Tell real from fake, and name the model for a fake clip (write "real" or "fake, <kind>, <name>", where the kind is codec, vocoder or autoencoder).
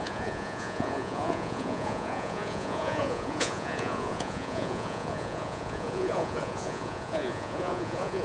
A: fake, vocoder, Vocos